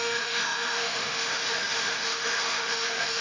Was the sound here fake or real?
fake